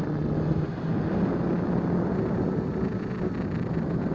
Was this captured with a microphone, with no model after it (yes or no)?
yes